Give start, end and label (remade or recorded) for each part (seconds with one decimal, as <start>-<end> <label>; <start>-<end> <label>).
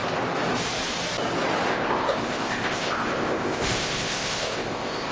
0.0-1.7 recorded; 1.7-5.1 remade